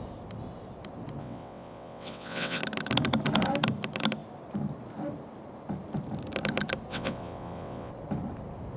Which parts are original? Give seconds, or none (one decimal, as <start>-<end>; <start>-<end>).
0.0-1.2; 2.6-6.9; 7.9-8.8